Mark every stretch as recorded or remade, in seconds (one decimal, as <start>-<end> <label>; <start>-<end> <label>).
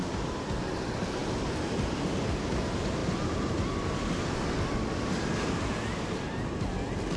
0.0-7.2 recorded